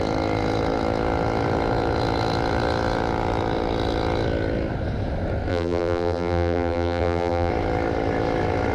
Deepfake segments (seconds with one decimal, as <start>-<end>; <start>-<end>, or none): 5.5-7.5